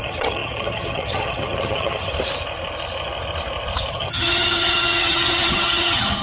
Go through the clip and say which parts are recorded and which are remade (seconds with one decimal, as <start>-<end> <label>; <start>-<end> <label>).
0.0-2.1 remade; 2.1-3.9 recorded; 3.9-6.2 remade